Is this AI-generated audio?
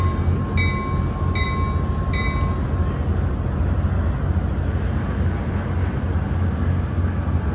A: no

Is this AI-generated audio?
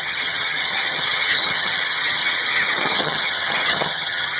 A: yes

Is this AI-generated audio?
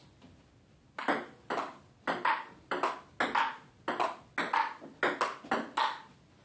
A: no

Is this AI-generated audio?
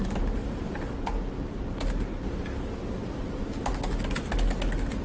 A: no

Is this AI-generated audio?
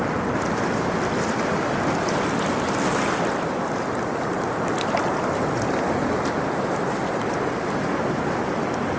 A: no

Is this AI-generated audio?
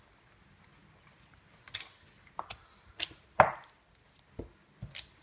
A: no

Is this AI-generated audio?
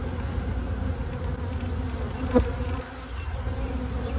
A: no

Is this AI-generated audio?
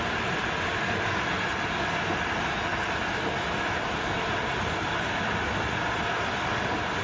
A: no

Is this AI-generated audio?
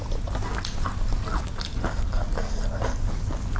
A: no